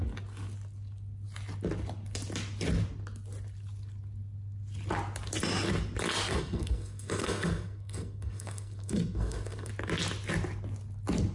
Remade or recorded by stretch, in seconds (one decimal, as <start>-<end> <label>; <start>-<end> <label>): 0.0-6.3 recorded; 6.3-9.7 remade; 9.7-11.3 recorded